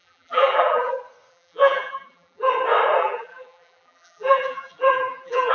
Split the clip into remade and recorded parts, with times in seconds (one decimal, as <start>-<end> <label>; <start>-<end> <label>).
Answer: 0.0-0.9 remade; 0.9-1.3 recorded; 1.3-2.5 remade; 2.5-3.0 recorded; 3.0-5.5 remade